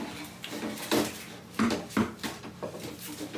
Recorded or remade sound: recorded